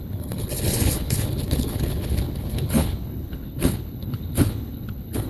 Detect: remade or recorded remade